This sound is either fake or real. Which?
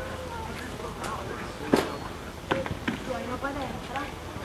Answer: real